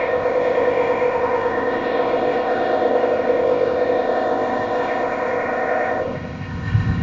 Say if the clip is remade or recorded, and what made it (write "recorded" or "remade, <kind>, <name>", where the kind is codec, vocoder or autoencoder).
remade, codec, ZipCodec